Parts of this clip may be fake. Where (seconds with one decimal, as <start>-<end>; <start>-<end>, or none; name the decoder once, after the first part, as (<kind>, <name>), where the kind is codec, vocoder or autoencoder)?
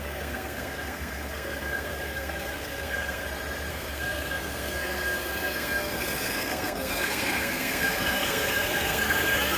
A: 0.0-3.2 (codec, SNAC); 3.7-9.6